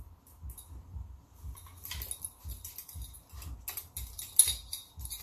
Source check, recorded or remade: recorded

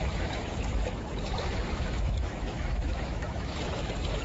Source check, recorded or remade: remade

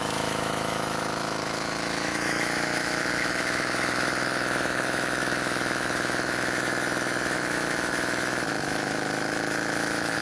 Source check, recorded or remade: remade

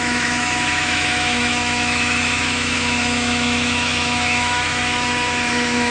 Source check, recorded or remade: remade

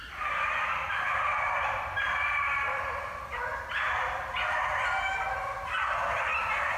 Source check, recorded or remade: recorded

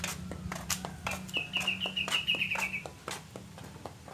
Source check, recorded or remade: recorded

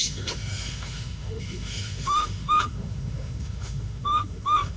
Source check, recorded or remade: remade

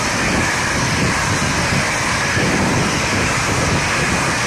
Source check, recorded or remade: recorded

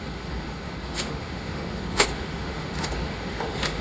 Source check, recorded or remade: remade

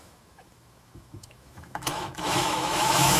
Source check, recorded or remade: remade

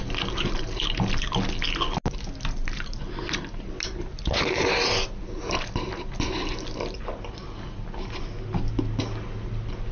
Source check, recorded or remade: recorded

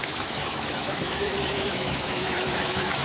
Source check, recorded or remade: remade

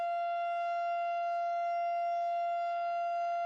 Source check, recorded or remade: remade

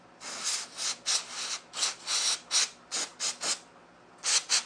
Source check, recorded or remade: recorded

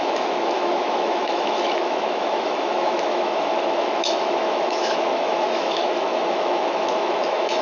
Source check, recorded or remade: remade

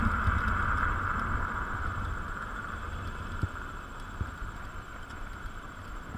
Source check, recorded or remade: recorded